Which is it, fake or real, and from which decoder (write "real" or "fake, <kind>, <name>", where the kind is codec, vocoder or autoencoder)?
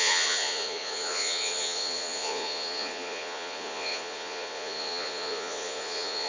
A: fake, vocoder, Vocos